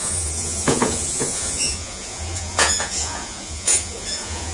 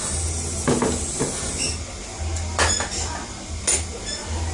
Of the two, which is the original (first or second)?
second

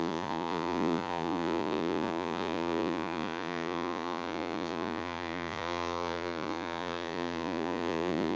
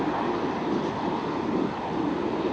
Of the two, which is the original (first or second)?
second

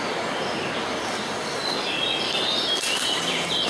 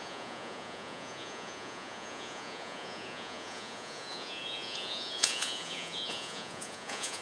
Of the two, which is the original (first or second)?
first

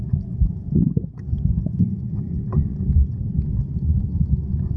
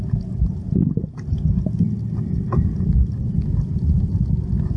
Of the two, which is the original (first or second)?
second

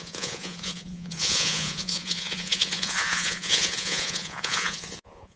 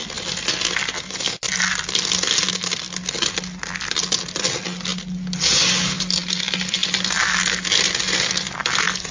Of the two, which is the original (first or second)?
second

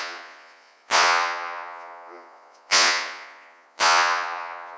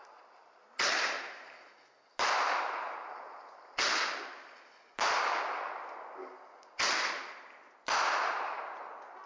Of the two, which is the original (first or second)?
second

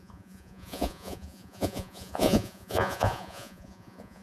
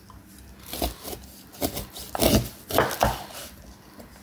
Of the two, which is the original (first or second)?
second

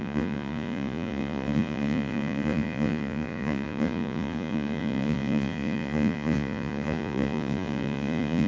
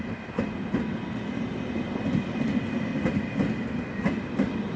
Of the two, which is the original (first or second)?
second